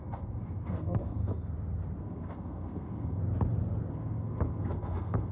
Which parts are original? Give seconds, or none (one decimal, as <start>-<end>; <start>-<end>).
1.2-2.0; 3.2-3.9